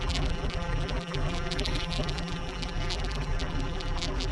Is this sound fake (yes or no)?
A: yes